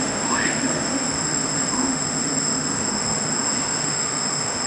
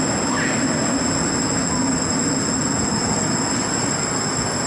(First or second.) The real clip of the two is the second